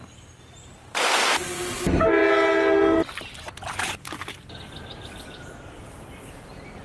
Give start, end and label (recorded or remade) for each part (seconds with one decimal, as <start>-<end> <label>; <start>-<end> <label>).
0.0-6.8 recorded